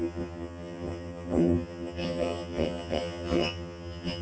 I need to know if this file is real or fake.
fake